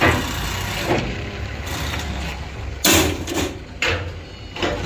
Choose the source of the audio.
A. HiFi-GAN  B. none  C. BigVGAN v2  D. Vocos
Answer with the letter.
B